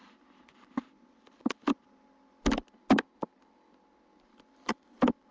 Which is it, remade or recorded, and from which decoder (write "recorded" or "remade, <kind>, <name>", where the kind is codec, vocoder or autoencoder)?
recorded